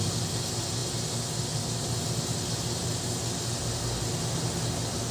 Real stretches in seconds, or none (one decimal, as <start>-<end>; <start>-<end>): 0.0-5.1